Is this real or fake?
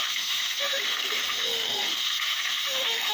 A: fake